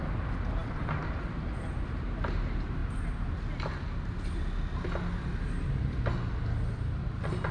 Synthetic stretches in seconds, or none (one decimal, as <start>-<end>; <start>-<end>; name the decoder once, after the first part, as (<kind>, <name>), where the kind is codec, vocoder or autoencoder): none